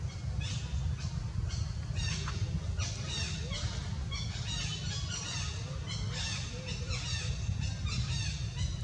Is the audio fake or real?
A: real